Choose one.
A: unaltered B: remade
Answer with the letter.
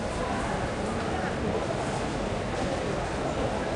A